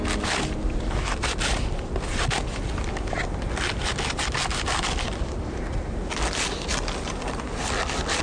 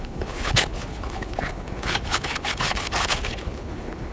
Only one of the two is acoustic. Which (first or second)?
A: first